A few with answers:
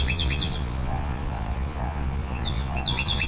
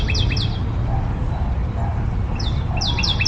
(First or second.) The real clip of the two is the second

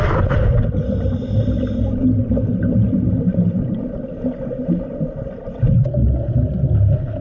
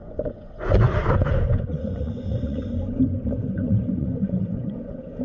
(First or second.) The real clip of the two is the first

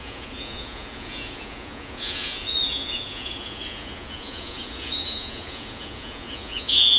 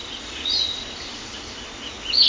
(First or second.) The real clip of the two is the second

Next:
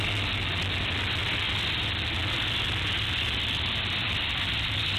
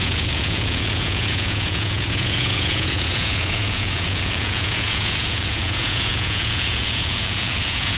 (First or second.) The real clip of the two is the first